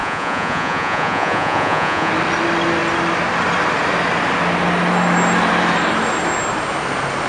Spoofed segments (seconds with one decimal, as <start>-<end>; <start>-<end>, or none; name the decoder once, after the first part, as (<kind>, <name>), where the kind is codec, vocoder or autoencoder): 0.0-2.1 (vocoder, Vocos)